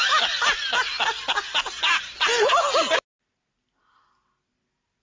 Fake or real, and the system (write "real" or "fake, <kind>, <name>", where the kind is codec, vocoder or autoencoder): real